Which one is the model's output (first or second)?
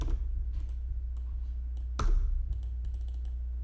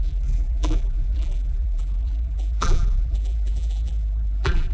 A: second